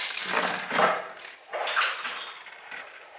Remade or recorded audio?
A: recorded